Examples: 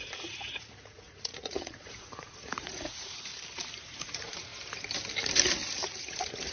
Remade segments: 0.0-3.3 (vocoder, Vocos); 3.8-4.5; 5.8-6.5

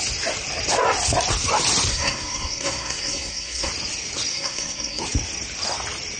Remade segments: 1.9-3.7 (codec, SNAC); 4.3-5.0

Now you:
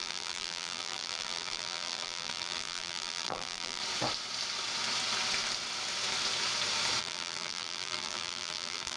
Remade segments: 0.0-3.8 (vocoder, BigVGAN v2); 7.0-9.0

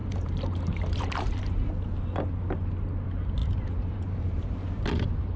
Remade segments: 0.0-1.7 (vocoder, BigVGAN v2); 3.4-4.8

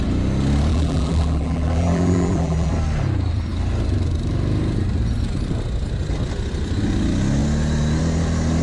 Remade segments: 0.7-2.7 (vocoder, BigVGAN v2)